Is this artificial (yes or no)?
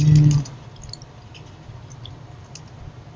no